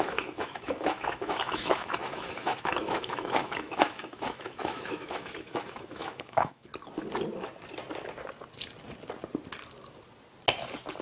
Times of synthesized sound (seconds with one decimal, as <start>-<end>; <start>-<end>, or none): 0.0-6.7